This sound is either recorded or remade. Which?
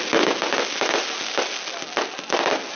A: recorded